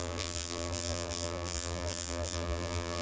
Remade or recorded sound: remade